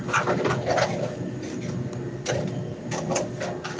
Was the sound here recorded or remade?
recorded